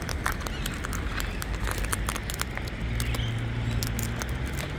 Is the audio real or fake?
real